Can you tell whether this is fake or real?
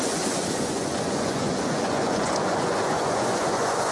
fake